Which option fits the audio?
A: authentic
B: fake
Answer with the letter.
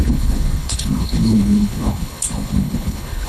B